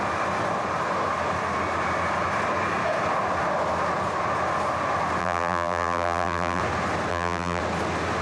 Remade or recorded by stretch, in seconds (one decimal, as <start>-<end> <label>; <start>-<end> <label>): 0.0-5.2 recorded; 5.2-6.6 remade; 6.6-7.1 recorded; 7.1-7.6 remade; 7.6-8.2 recorded